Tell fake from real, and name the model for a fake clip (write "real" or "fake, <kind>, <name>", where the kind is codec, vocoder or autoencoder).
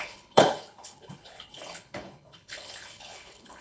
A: fake, codec, HILCodec